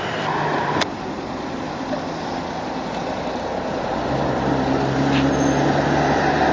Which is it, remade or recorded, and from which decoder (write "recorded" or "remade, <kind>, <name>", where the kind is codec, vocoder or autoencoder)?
recorded